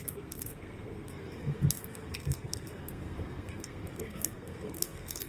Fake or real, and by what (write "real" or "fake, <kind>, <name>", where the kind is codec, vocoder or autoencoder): fake, codec, SNAC